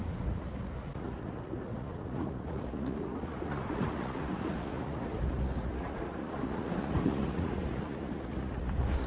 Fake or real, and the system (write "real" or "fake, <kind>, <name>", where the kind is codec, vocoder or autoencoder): fake, vocoder, Vocos